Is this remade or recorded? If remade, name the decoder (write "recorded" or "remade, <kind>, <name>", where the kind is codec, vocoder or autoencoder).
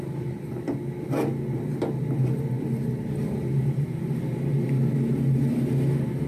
recorded